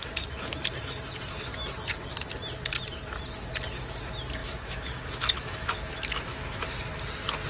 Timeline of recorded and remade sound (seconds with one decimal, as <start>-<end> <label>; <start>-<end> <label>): 0.0-4.4 recorded; 4.4-6.8 remade; 6.8-7.5 recorded